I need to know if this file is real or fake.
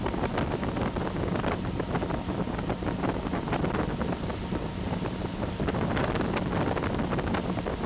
real